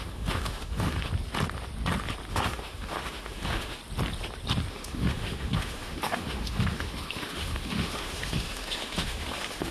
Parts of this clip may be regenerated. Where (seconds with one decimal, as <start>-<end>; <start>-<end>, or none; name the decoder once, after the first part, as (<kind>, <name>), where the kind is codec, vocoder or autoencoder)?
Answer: 0.0-1.1 (autoencoder, DAC-VAE); 2.3-3.8; 4.7-9.7